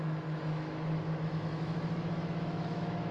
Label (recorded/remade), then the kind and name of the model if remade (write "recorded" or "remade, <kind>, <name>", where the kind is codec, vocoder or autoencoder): remade, autoencoder, DAC-VAE